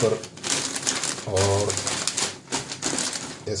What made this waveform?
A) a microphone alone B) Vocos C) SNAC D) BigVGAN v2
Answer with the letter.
A